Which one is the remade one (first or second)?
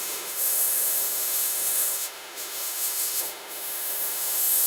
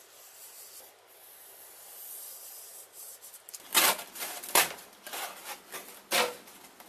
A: first